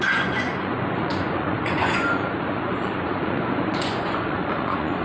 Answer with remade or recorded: remade